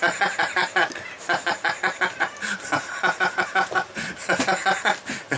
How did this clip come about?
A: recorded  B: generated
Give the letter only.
B